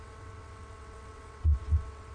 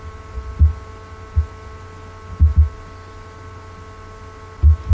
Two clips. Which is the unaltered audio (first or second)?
second